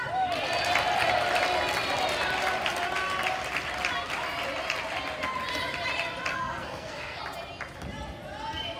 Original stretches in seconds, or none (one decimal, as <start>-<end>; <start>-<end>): 0.0-6.3; 7.2-8.8